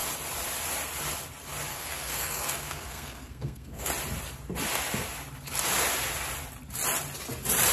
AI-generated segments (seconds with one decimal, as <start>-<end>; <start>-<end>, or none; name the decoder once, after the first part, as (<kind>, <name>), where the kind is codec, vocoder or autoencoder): 1.7-3.9 (codec, SNAC)